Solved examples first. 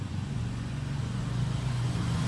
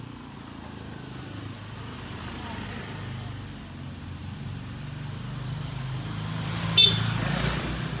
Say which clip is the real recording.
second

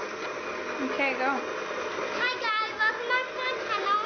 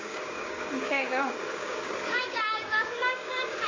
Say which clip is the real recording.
first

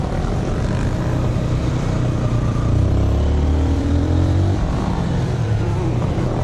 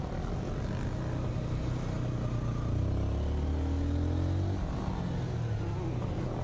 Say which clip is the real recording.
second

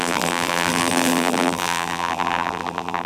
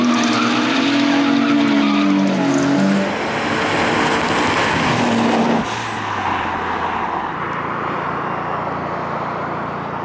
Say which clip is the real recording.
second